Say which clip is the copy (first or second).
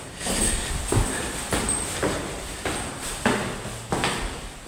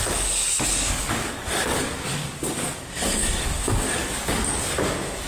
second